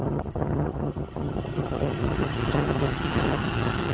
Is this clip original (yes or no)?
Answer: no